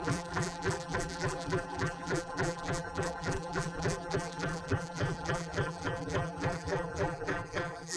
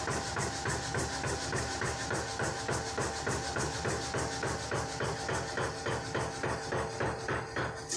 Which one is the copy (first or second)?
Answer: first